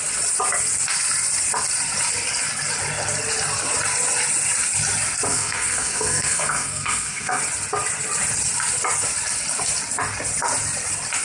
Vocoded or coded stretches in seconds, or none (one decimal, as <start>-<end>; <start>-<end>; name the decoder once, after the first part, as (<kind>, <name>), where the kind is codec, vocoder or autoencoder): 5.3-7.4 (codec, SNAC)